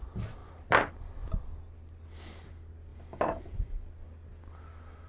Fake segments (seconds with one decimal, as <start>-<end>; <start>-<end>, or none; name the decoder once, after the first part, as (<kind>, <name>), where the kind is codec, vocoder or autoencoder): none